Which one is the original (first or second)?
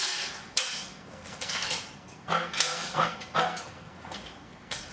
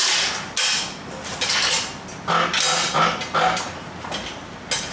second